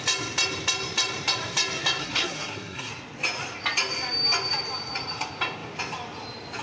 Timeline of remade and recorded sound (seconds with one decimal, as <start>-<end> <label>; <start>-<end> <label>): 0.0-2.0 recorded; 2.0-2.9 remade; 2.9-6.6 recorded